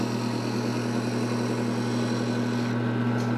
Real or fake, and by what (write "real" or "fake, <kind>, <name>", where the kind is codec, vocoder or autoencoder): real